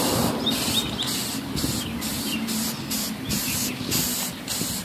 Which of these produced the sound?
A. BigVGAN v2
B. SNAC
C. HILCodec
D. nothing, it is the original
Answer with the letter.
D